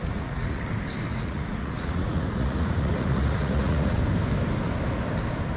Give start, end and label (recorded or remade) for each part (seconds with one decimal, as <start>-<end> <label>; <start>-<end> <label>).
0.0-0.7 remade; 0.7-1.1 recorded; 1.1-4.0 remade; 4.0-5.6 recorded